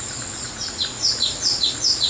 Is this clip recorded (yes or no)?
no